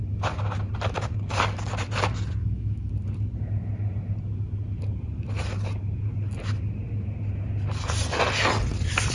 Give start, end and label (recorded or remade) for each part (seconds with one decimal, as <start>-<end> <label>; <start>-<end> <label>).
0.0-2.4 recorded; 2.4-2.9 remade; 2.9-9.1 recorded